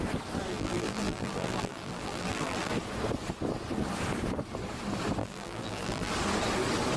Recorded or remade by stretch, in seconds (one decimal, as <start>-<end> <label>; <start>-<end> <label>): 0.0-0.5 recorded; 0.5-2.7 remade; 2.7-5.2 recorded; 5.2-6.1 remade; 6.1-7.0 recorded